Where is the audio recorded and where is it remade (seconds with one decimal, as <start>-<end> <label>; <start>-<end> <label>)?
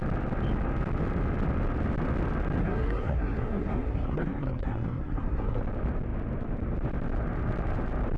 0.0-2.6 recorded; 2.6-5.6 remade; 5.6-8.2 recorded